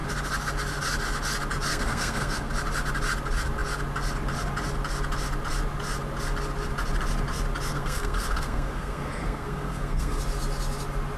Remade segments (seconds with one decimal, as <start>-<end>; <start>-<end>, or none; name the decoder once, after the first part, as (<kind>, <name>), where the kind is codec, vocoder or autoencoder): 1.7-2.5 (codec, SNAC); 7.7-10.2